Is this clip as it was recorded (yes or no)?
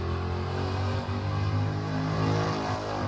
yes